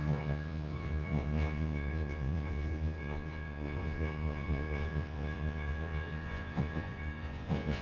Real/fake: fake